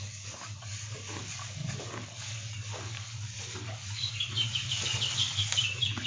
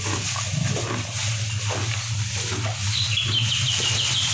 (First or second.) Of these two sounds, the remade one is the first